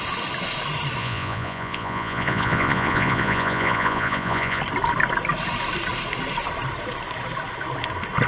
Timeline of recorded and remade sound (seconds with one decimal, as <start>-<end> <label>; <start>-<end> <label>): 0.0-1.0 recorded; 1.0-4.6 remade; 4.6-8.3 recorded